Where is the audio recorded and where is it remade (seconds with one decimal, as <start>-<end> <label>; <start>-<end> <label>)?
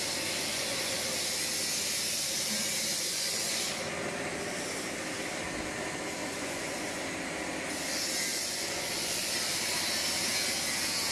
0.0-0.5 recorded; 0.5-1.0 remade; 1.0-2.9 recorded; 2.9-3.7 remade; 3.7-6.2 recorded; 6.2-7.0 remade; 7.0-8.3 recorded; 8.3-9.3 remade; 9.3-11.1 recorded